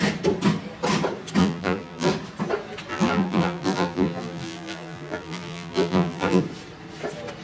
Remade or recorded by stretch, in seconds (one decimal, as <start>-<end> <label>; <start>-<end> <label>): 0.0-1.4 recorded; 1.4-2.1 remade; 2.1-2.9 recorded; 2.9-6.4 remade; 6.4-7.4 recorded